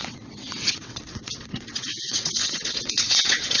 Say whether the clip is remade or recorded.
remade